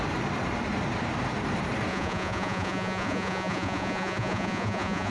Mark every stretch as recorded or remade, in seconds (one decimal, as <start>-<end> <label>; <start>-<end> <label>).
0.0-1.9 recorded; 1.9-5.1 remade